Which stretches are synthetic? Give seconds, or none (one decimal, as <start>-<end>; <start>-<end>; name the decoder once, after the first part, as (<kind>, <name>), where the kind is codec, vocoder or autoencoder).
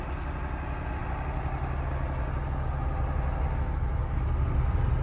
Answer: none